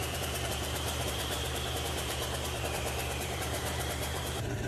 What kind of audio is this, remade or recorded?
remade